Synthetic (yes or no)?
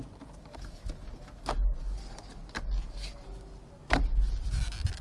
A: no